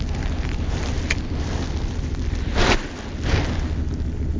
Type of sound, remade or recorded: recorded